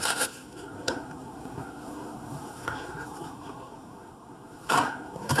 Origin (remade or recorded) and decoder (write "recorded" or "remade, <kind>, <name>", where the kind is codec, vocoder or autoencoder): remade, codec, SNAC